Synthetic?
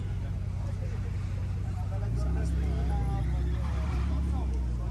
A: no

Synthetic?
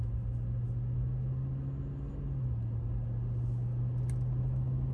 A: no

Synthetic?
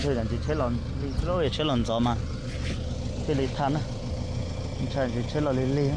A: no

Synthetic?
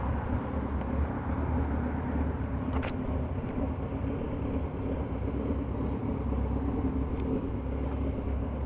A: yes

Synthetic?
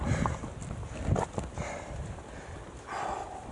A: no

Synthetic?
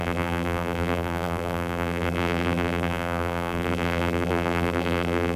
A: yes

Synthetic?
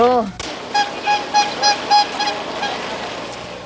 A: no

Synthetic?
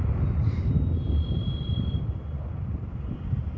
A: no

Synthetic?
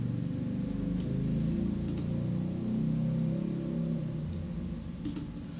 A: no